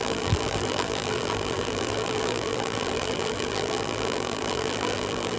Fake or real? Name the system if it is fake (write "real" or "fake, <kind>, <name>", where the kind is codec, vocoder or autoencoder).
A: fake, vocoder, BigVGAN v2